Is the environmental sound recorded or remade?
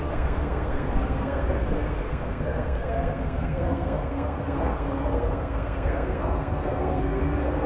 remade